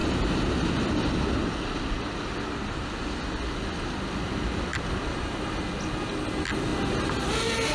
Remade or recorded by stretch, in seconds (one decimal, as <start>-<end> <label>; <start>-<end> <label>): 0.0-7.7 recorded